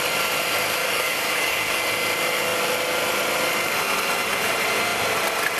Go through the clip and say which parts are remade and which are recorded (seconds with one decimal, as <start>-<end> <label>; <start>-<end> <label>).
0.0-0.8 recorded; 0.8-1.8 remade; 1.8-5.6 recorded